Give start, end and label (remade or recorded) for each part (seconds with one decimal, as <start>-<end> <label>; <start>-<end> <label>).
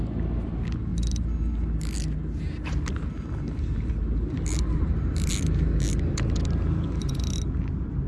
0.0-8.1 recorded